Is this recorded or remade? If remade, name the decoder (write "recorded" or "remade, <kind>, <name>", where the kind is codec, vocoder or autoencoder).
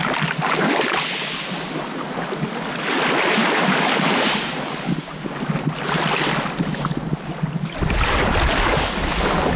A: recorded